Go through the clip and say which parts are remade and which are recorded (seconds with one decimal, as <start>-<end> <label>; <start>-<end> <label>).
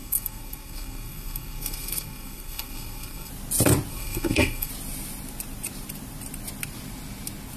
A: 0.0-3.3 remade; 3.3-3.9 recorded; 3.9-4.7 remade; 4.7-7.6 recorded